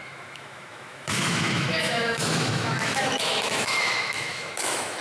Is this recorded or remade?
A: remade